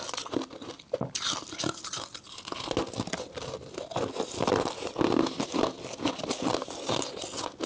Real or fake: real